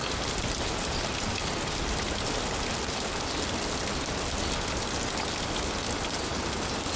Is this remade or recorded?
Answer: recorded